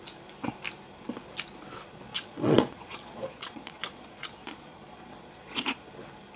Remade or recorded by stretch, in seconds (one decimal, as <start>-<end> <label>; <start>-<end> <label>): 0.0-2.1 recorded; 2.1-5.9 remade; 5.9-6.4 recorded